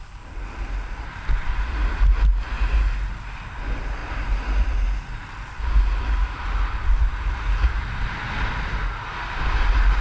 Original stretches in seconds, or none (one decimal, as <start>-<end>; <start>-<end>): 0.0-10.0